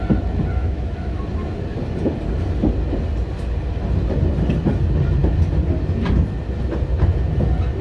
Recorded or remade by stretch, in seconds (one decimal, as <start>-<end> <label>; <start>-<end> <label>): 0.0-0.6 recorded; 0.6-1.2 remade; 1.2-7.8 recorded